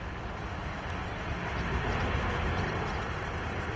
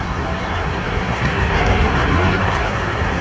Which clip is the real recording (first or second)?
first